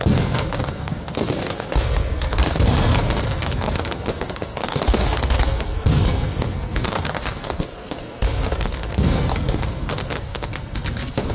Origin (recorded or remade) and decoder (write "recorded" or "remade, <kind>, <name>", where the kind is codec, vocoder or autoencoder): remade, codec, SNAC